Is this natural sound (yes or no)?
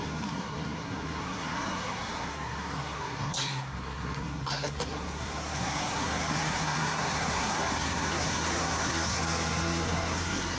no